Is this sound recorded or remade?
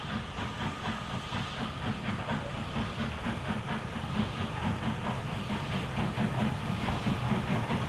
recorded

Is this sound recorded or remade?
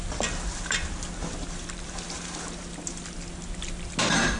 recorded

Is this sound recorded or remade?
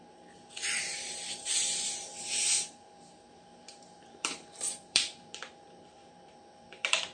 remade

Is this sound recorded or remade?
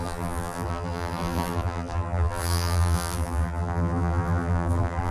remade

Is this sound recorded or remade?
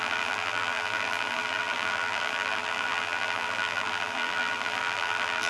remade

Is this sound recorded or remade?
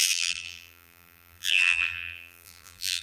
remade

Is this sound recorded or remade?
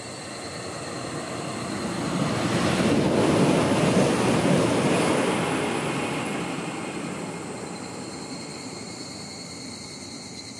recorded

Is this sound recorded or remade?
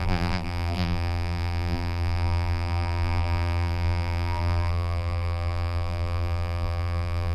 remade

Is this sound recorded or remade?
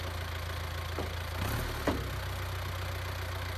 recorded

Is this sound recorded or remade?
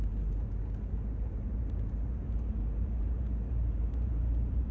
remade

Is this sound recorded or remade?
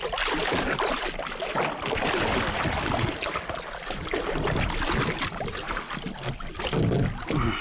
recorded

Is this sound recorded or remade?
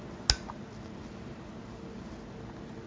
recorded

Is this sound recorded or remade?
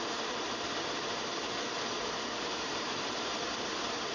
remade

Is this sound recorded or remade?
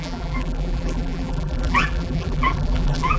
remade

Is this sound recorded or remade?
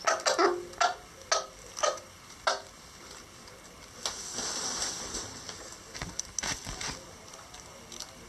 recorded